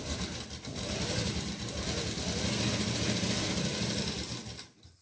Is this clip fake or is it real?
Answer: real